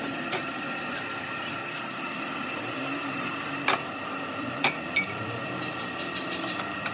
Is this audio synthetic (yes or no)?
yes